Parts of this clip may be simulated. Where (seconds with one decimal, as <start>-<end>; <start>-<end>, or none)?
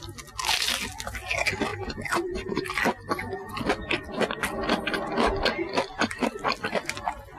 none